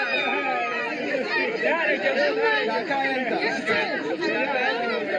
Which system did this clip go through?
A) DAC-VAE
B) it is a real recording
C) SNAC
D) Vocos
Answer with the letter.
B